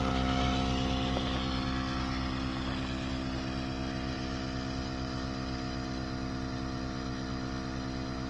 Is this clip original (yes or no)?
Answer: yes